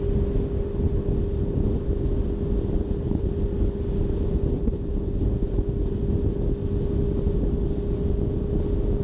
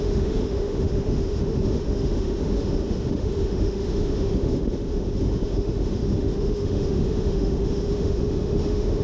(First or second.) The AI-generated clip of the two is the second